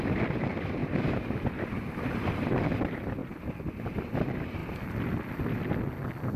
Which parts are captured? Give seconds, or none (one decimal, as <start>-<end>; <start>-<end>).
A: 0.0-0.8; 2.5-6.4